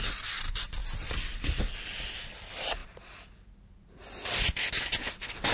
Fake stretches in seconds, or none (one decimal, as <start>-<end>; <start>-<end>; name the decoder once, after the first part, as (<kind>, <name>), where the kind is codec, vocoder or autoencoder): 0.8-2.2 (vocoder, BigVGAN v2)

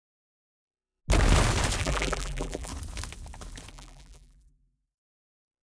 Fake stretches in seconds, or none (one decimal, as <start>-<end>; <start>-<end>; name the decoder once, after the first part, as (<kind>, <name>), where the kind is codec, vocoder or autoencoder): 0.0-1.0 (vocoder, BigVGAN v2); 1.8-2.7; 3.7-5.6

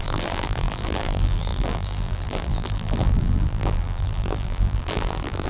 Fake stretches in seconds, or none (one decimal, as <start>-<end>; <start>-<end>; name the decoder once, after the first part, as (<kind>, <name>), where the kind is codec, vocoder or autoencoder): 0.0-5.5 (vocoder, BigVGAN v2)